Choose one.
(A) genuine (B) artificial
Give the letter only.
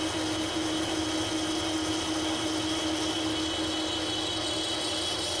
A